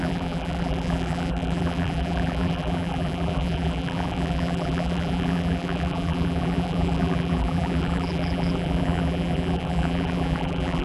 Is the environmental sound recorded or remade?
remade